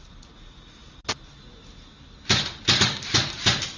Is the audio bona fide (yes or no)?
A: yes